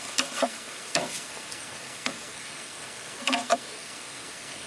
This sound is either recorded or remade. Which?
remade